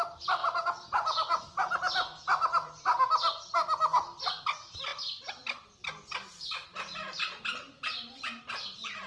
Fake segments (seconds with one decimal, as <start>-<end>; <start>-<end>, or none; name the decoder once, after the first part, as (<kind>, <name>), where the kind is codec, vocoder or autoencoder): 0.4-1.4 (vocoder, Vocos)